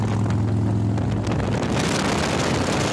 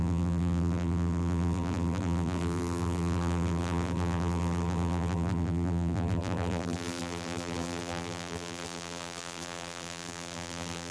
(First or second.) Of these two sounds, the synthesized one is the second